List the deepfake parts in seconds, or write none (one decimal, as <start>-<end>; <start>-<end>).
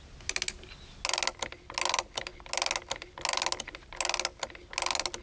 none